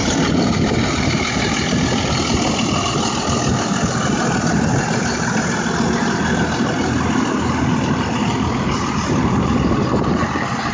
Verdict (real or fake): real